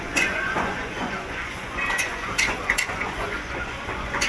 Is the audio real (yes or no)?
no